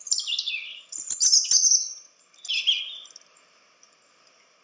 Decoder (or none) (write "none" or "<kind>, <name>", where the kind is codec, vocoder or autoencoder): none